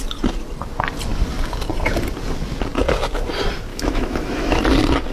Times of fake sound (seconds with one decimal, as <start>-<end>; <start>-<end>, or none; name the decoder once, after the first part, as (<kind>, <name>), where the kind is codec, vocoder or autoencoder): 3.7-4.6 (autoencoder, DAC-VAE)

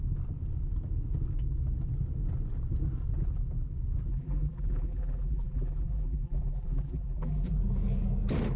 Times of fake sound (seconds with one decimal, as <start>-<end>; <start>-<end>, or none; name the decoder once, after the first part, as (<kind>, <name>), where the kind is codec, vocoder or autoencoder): 4.1-7.6 (vocoder, BigVGAN v2)